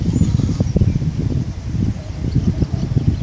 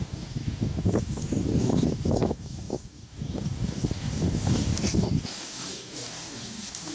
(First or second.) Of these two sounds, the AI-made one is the second